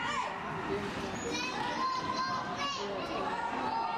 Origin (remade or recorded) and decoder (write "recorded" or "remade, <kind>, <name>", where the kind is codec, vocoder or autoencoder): recorded